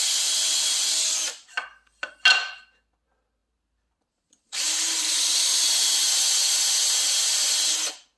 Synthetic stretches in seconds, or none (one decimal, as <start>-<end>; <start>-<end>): 3.4-5.2